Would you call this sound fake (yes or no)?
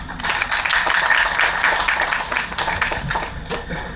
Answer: no